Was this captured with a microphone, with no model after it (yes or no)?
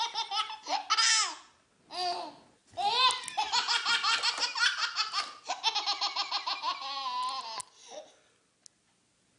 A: yes